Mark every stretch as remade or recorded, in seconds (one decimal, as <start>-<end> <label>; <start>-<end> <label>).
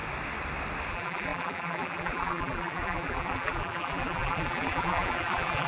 0.0-0.9 recorded; 0.9-5.7 remade